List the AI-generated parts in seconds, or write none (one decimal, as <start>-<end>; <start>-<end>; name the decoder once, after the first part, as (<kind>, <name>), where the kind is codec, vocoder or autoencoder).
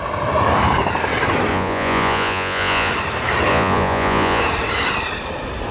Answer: 1.5-2.9 (vocoder, Vocos); 3.5-4.4